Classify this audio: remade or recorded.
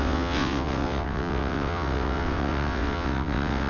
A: remade